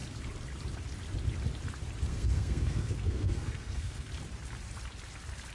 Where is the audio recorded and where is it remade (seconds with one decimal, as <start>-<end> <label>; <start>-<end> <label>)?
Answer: 0.0-2.1 recorded; 2.1-4.1 remade; 4.1-5.5 recorded